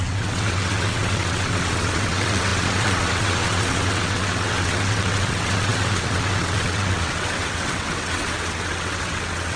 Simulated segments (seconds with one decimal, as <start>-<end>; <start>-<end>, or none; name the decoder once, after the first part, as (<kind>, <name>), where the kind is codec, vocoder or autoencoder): 0.0-9.6 (vocoder, WaveNeXt)